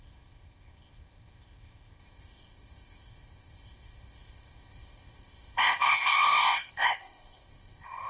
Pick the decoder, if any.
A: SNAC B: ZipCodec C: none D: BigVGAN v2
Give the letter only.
B